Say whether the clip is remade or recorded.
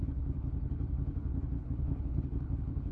remade